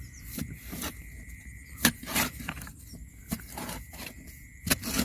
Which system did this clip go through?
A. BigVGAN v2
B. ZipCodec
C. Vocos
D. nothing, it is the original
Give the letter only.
A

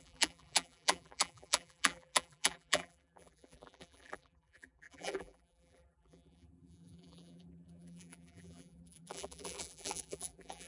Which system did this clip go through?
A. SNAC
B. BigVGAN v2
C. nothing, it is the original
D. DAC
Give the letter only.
B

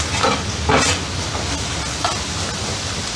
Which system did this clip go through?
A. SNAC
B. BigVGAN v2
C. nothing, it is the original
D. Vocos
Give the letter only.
C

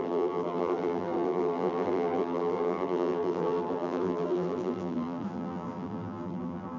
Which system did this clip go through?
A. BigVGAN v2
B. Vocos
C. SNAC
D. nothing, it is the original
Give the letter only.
A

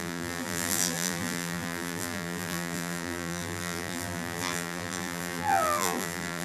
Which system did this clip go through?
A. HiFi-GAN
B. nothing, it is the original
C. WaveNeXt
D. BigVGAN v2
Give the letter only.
D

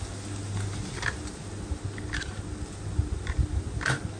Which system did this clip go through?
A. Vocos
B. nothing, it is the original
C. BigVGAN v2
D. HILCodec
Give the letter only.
B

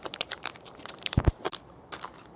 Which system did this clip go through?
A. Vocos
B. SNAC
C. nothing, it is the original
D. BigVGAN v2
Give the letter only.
D